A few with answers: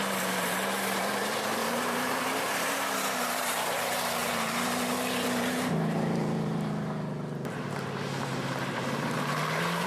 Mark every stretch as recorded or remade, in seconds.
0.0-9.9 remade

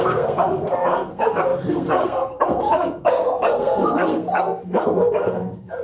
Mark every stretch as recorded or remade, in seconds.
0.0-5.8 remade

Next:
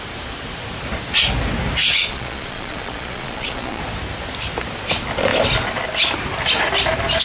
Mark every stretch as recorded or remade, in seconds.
0.0-1.8 recorded; 1.8-3.8 remade; 3.8-7.2 recorded

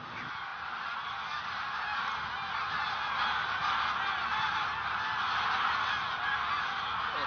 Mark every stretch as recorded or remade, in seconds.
0.0-7.3 recorded

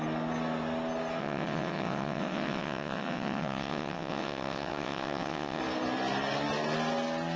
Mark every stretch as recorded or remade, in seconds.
0.0-1.2 recorded; 1.2-5.6 remade; 5.6-7.4 recorded

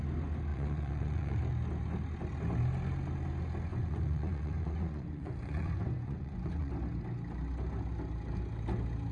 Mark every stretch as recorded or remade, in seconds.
0.0-0.5 recorded; 0.5-1.4 remade; 1.4-3.7 recorded; 3.7-6.7 remade; 6.7-9.1 recorded

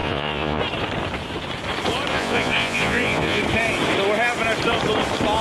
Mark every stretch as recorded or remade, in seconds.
0.0-0.6 remade; 0.6-2.1 recorded; 2.1-3.4 remade; 3.4-5.4 recorded